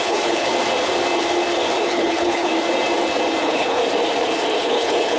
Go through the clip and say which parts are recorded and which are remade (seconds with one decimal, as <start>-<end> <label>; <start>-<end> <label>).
0.0-0.5 remade; 0.5-1.8 recorded; 1.8-2.5 remade; 2.5-3.4 recorded; 3.4-3.8 remade; 3.8-4.6 recorded; 4.6-5.2 remade

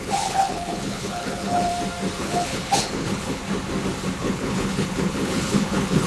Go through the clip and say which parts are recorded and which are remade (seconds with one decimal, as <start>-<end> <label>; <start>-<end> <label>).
0.0-1.7 remade; 1.7-2.2 recorded; 2.2-3.4 remade; 3.4-4.2 recorded; 4.2-6.1 remade

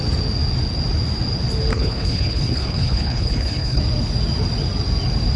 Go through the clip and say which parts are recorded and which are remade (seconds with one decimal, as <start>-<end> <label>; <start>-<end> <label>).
0.0-1.7 recorded; 1.7-3.8 remade; 3.8-5.4 recorded